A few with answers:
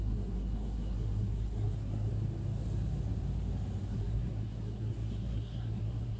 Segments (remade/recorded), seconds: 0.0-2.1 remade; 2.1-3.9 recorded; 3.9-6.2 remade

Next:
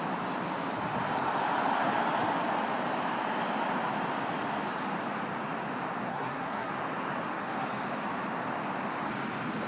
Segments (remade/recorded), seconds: 0.0-6.1 recorded; 6.1-6.7 remade; 6.7-9.7 recorded

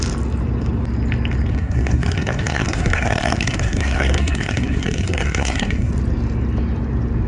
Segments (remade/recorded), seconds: 0.0-1.5 recorded; 1.5-5.9 remade; 5.9-7.3 recorded

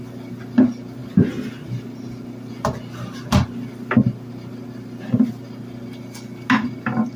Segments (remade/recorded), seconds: 0.0-7.2 recorded

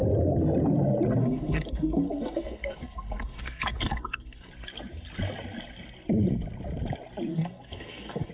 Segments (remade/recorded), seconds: 0.0-1.2 recorded; 1.2-4.5 remade; 4.5-7.3 recorded; 7.3-8.3 remade

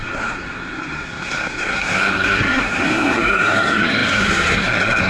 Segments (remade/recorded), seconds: 0.0-5.1 remade

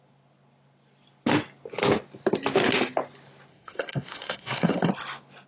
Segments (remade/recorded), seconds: 0.0-3.5 recorded; 3.5-4.9 remade; 4.9-5.5 recorded